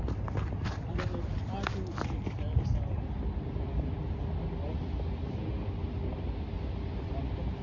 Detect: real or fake real